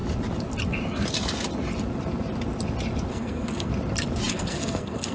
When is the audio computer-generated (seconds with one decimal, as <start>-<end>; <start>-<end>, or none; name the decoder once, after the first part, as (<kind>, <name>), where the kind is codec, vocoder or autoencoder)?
3.1-3.7 (codec, SNAC); 4.3-5.1